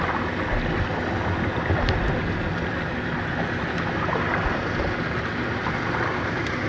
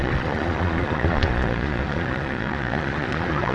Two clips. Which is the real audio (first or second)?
first